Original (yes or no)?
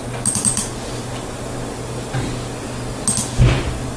yes